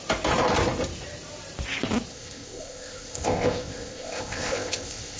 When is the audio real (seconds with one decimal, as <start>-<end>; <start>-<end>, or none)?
0.0-2.1